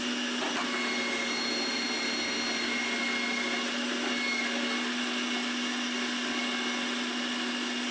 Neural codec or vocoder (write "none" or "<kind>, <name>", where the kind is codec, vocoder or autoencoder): none